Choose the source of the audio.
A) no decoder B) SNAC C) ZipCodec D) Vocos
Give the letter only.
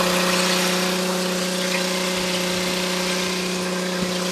A